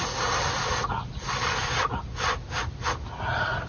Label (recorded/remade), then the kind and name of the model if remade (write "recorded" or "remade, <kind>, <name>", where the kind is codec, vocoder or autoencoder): recorded